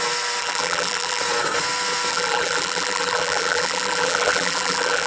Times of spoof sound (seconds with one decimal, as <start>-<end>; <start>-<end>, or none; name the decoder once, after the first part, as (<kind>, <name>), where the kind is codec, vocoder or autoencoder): 0.4-1.2 (vocoder, BigVGAN v2); 2.1-5.1